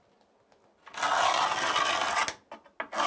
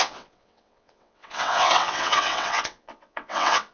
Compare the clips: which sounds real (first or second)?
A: first